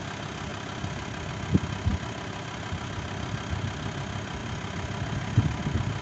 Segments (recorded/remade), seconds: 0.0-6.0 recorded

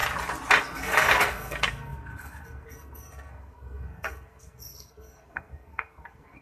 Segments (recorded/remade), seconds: 0.0-0.6 recorded; 0.6-6.4 remade

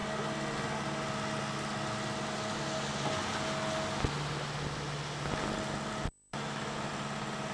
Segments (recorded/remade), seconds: 0.0-6.3 recorded; 6.3-6.9 remade; 6.9-7.5 recorded

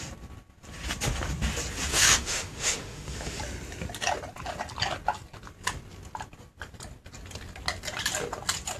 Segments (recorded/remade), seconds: 0.0-1.9 recorded; 1.9-3.4 remade; 3.4-8.8 recorded

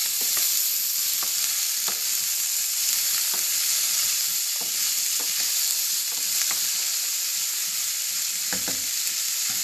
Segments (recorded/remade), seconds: 0.0-9.6 recorded

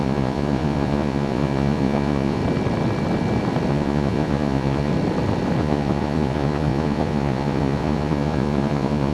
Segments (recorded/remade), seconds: 0.0-2.4 remade; 2.4-3.7 recorded; 3.7-4.9 remade; 4.9-5.6 recorded; 5.6-9.1 remade